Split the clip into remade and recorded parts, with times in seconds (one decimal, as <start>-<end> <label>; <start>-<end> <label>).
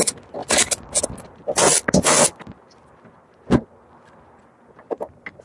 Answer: 0.0-5.4 recorded